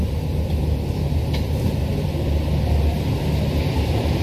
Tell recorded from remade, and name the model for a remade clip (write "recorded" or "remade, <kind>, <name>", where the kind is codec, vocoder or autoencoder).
recorded